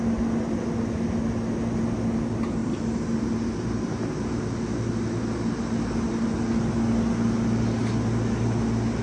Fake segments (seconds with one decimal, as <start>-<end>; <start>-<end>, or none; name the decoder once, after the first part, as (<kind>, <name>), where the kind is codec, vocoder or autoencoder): none